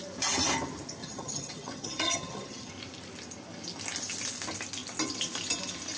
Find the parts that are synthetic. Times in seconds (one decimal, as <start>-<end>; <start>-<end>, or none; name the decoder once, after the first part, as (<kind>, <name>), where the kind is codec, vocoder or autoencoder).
1.0-2.7 (vocoder, HiFi-GAN)

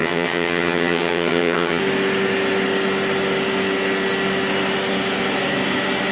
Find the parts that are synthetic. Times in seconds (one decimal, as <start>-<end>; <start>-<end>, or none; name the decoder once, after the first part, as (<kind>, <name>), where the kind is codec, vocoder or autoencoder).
0.0-1.8 (vocoder, HiFi-GAN)

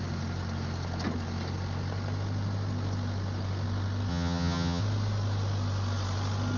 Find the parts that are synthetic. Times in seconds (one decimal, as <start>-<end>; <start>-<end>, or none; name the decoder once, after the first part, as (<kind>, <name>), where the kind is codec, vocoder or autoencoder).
4.1-4.8 (vocoder, HiFi-GAN)

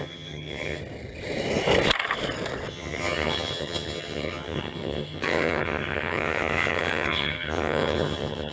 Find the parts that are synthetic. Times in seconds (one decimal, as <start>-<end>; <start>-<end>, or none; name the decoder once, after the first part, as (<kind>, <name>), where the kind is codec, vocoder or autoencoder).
0.0-0.8 (vocoder, HiFi-GAN); 2.7-8.5

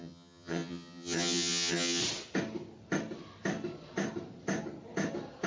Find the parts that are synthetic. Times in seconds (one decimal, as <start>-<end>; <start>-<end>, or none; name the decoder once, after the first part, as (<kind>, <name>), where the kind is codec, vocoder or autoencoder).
0.0-2.0 (vocoder, HiFi-GAN)